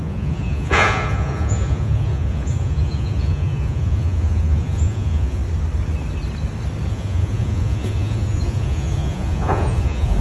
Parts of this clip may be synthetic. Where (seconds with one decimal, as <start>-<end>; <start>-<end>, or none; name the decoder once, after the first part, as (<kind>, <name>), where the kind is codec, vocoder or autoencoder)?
0.0-5.4 (vocoder, Vocos); 6.9-10.2